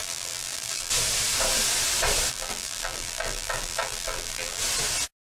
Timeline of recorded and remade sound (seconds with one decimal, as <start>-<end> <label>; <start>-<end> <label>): 0.0-0.9 remade; 0.9-2.3 recorded; 2.3-4.6 remade; 4.6-5.3 recorded